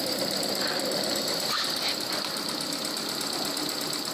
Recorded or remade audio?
recorded